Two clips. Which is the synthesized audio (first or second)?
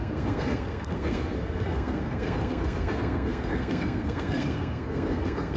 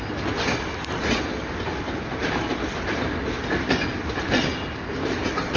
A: first